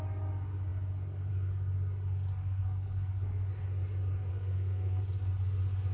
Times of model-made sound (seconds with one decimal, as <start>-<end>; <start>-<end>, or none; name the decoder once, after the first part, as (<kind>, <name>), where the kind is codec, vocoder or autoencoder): 2.4-3.5 (codec, SNAC); 4.3-5.0